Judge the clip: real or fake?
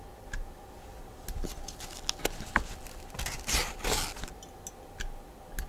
real